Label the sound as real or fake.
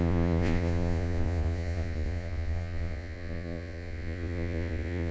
fake